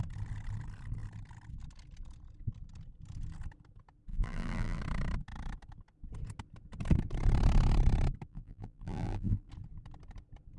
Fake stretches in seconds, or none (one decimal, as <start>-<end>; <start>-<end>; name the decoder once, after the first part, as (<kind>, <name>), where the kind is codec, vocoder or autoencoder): 4.1-4.8 (vocoder, BigVGAN v2); 8.3-9.5